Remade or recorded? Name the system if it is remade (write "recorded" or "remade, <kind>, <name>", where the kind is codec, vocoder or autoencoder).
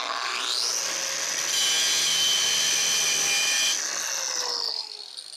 recorded